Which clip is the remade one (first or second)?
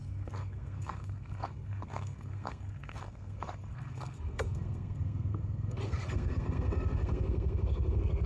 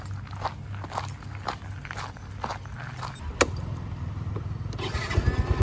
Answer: first